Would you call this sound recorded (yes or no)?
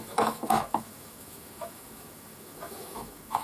no